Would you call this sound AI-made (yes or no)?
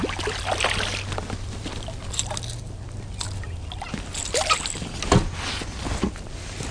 no